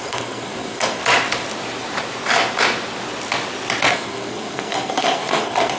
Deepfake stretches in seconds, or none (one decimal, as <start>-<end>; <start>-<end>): 0.0-1.0; 3.9-5.8